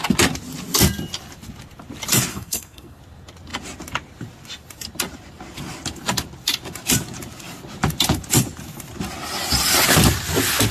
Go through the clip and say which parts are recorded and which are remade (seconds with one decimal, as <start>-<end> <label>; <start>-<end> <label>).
0.0-2.3 recorded; 2.3-3.0 remade; 3.0-10.7 recorded